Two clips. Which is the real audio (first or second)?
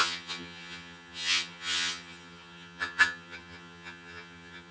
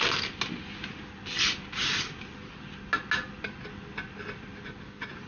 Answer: second